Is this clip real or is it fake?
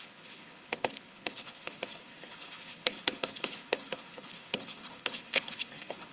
fake